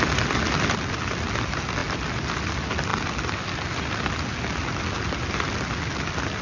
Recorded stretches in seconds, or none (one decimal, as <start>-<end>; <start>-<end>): 0.0-6.4